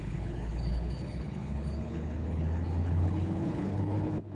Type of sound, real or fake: fake